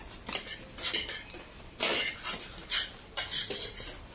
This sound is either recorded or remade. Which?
recorded